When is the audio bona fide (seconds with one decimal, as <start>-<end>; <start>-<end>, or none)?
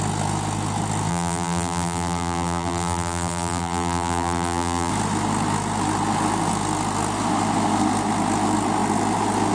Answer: 0.0-1.1; 4.9-9.5